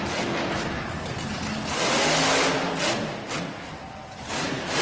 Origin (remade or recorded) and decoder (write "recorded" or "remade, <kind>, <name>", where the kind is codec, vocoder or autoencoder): recorded